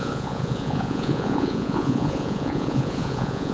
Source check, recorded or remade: remade